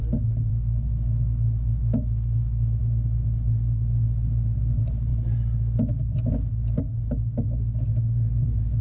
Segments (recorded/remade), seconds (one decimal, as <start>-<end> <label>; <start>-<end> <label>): 0.0-0.5 recorded; 0.5-2.8 remade; 2.8-8.8 recorded